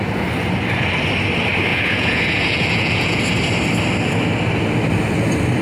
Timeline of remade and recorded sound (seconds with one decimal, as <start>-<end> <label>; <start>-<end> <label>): 0.0-1.7 recorded; 1.7-3.2 remade; 3.2-5.6 recorded